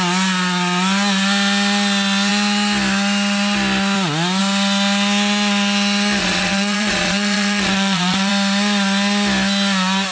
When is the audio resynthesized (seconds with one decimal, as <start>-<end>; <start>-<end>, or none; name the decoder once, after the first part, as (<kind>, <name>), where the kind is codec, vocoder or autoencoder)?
6.2-8.3 (vocoder, Vocos)